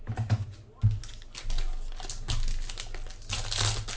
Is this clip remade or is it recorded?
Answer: recorded